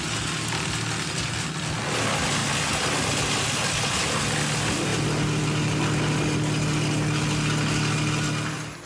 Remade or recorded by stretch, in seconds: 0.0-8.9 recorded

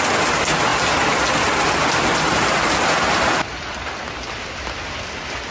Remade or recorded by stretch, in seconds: 0.0-5.5 recorded

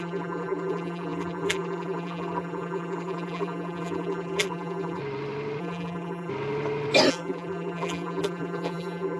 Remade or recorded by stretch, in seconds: 0.0-5.0 remade; 5.0-5.6 recorded; 5.6-6.3 remade; 6.3-7.1 recorded; 7.1-9.2 remade

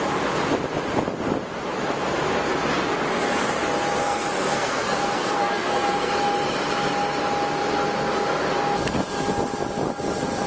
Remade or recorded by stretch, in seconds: 0.0-4.0 recorded; 4.0-6.1 remade; 6.1-10.5 recorded

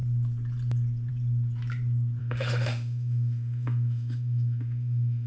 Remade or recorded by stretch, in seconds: 0.0-2.2 recorded; 2.2-5.3 remade

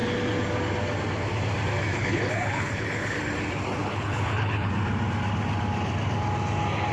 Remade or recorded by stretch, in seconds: 0.0-1.9 recorded; 1.9-3.2 remade; 3.2-3.8 recorded; 3.8-4.7 remade; 4.7-6.9 recorded